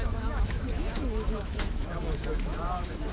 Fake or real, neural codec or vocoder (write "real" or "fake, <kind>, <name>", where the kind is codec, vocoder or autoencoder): fake, autoencoder, DAC-VAE